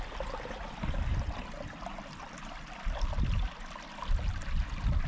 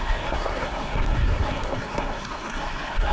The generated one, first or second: second